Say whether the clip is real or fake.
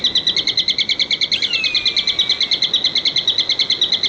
real